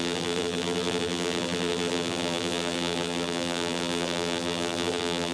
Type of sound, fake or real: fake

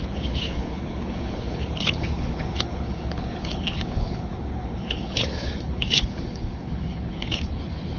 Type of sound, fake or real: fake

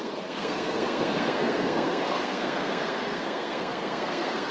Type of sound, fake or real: fake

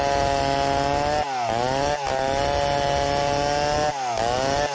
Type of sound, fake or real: real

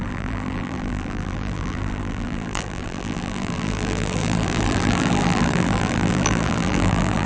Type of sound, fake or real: fake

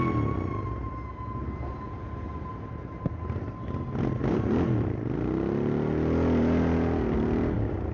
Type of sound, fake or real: real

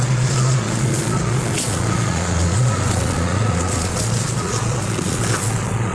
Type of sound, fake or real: fake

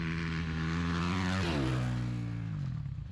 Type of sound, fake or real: real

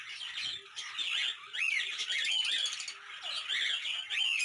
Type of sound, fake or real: real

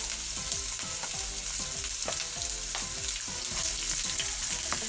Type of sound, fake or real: real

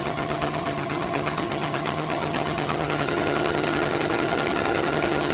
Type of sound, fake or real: fake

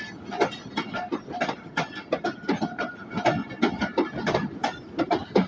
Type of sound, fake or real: real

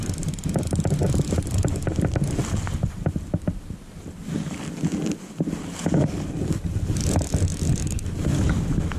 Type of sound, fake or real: real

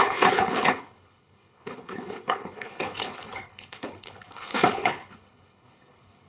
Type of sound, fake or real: fake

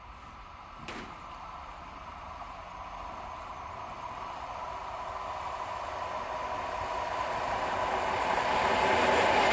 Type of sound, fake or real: real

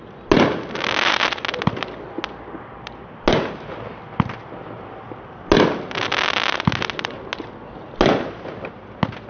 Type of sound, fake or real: real